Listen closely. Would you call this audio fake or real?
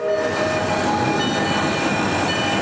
real